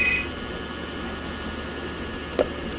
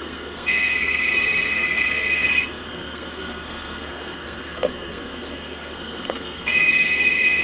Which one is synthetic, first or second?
second